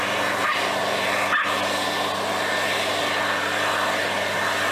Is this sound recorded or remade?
recorded